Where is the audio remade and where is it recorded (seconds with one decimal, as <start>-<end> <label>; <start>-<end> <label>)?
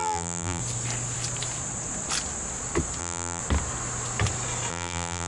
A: 0.0-0.6 remade; 0.6-3.0 recorded; 3.0-3.4 remade; 3.4-4.7 recorded; 4.7-5.3 remade